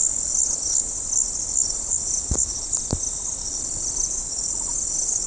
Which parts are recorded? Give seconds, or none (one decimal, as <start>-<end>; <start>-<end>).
0.0-1.7